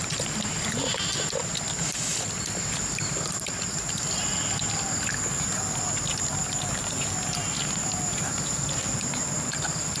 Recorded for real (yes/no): yes